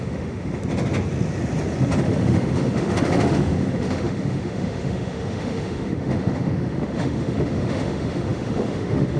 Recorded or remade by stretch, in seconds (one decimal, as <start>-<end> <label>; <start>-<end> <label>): 0.0-0.6 remade; 0.6-2.0 recorded; 2.0-9.2 remade